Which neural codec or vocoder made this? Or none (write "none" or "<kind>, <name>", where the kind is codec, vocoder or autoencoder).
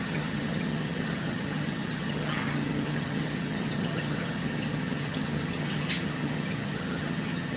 vocoder, HiFi-GAN